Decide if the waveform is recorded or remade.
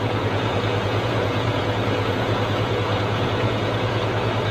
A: remade